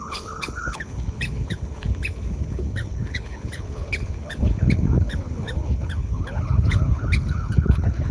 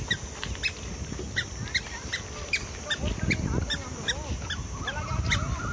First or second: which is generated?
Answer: first